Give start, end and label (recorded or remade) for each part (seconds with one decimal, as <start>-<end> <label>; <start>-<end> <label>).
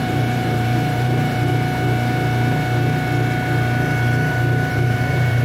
0.0-1.5 remade; 1.5-4.7 recorded; 4.7-5.4 remade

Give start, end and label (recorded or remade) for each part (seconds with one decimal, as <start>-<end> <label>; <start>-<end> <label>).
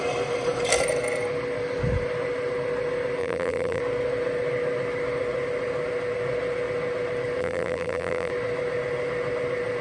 0.0-3.2 recorded; 3.2-3.8 remade; 3.8-7.4 recorded; 7.4-8.3 remade; 8.3-9.8 recorded